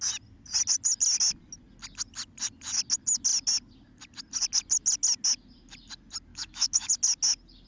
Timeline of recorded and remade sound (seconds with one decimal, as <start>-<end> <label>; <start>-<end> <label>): 0.0-6.3 recorded; 6.3-6.9 remade; 6.9-7.7 recorded